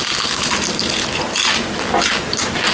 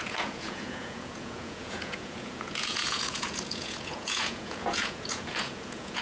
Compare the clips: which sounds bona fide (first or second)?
first